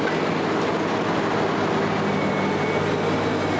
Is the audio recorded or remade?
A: recorded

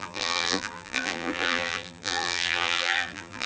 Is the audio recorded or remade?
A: remade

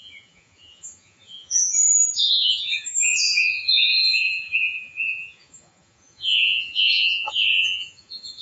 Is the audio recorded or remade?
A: remade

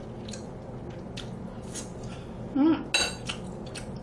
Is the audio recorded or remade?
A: recorded